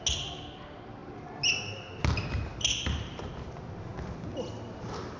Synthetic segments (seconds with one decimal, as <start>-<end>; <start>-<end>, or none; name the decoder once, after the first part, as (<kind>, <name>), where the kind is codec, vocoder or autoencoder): none